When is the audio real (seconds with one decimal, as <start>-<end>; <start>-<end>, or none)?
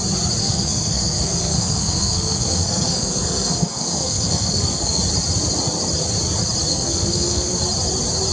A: 0.0-0.4; 5.0-6.7; 7.6-8.3